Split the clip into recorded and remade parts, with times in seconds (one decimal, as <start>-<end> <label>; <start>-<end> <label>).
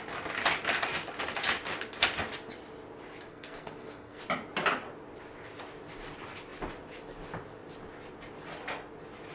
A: 0.0-3.3 recorded; 3.3-4.2 remade; 4.2-9.3 recorded